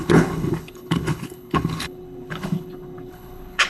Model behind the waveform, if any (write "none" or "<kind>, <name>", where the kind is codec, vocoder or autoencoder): codec, HILCodec